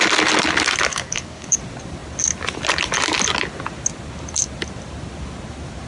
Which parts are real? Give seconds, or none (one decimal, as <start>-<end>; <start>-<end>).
0.0-0.9; 1.6-5.9